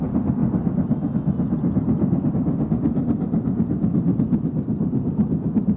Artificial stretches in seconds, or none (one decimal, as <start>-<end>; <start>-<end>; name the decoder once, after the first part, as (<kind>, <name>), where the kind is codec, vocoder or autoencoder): none